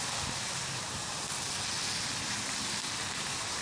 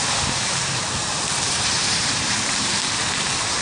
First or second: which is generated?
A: second